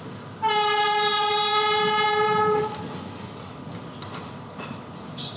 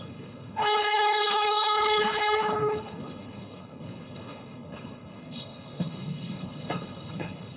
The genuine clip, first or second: first